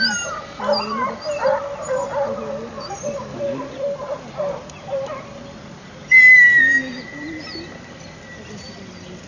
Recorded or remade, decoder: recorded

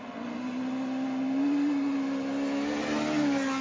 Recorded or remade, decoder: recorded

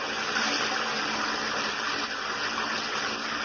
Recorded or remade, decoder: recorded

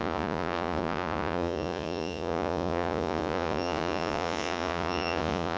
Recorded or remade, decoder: remade, vocoder, Vocos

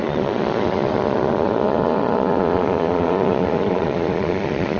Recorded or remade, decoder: remade, vocoder, Vocos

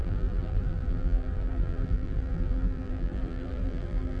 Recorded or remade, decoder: remade, vocoder, BigVGAN v2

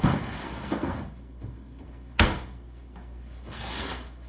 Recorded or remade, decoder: remade, codec, SNAC